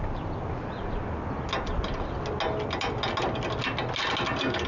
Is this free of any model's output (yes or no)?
yes